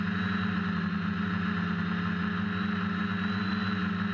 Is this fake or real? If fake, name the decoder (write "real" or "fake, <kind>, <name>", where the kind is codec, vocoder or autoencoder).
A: real